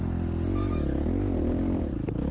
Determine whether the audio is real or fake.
real